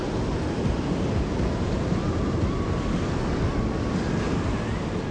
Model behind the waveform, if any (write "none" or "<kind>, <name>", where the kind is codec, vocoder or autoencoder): none